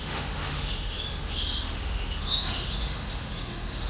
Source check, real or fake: fake